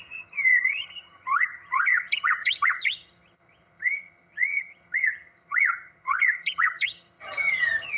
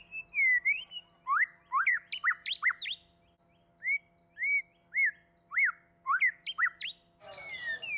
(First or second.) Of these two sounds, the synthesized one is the first